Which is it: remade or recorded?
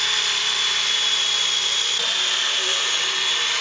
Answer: remade